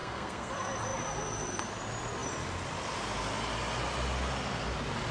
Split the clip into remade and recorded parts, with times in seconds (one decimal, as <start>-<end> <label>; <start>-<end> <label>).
0.0-0.5 remade; 0.5-5.1 recorded